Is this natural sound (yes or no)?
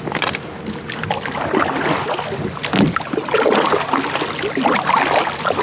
yes